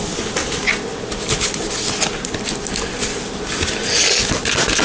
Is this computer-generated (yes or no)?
no